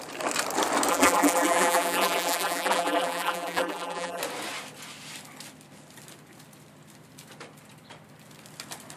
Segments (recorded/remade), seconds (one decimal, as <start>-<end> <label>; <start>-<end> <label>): 0.0-0.9 recorded; 0.9-4.2 remade; 4.2-9.0 recorded

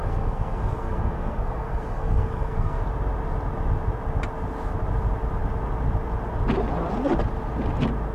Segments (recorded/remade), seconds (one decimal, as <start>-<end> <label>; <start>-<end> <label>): 0.0-2.8 remade; 2.8-8.1 recorded

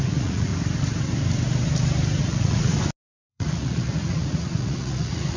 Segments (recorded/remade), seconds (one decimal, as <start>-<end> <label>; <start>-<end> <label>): 0.0-0.5 remade; 0.5-2.2 recorded; 2.2-2.7 remade; 2.7-3.3 recorded; 3.3-5.4 remade

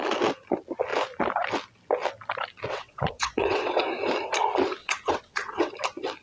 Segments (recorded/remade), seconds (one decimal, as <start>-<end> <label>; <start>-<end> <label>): 0.0-2.7 recorded; 2.7-3.8 remade; 3.8-4.8 recorded; 4.8-5.7 remade; 5.7-6.2 recorded

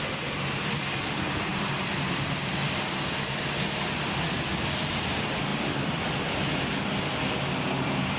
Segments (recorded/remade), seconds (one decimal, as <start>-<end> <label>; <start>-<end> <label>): 0.0-1.5 recorded; 1.5-4.5 remade; 4.5-5.5 recorded; 5.5-6.1 remade; 6.1-8.2 recorded

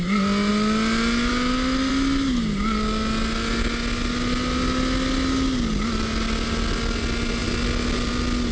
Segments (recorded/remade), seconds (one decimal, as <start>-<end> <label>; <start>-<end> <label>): 0.0-8.5 recorded

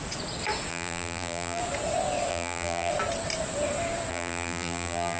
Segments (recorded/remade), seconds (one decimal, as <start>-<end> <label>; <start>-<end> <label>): 0.0-0.7 recorded; 0.7-1.6 remade; 1.6-2.3 recorded; 2.3-2.9 remade; 2.9-4.1 recorded; 4.1-5.2 remade

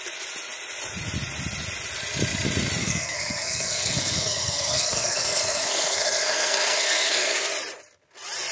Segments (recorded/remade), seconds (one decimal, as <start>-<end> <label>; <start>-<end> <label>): 0.0-2.8 recorded; 2.8-7.5 remade; 7.5-8.5 recorded